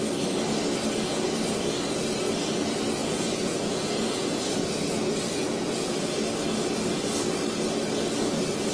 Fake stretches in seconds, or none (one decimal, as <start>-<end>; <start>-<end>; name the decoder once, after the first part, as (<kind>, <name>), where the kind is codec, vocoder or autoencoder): 3.0-4.4 (vocoder, Vocos); 5.4-5.9